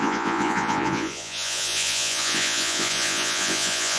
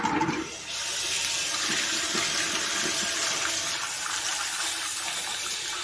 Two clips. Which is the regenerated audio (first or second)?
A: first